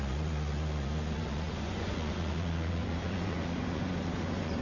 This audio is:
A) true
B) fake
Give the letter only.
B